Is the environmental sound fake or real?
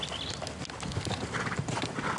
real